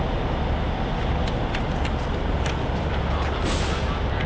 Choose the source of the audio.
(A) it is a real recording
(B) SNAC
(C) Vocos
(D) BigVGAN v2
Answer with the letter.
A